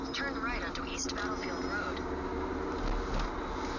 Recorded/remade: recorded